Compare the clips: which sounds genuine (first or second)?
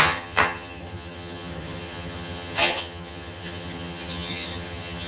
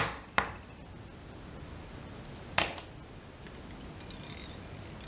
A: second